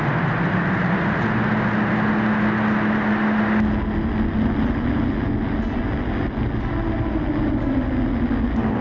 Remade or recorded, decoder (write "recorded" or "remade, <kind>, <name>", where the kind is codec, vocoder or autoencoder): recorded